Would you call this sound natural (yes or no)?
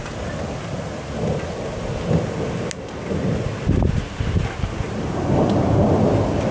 yes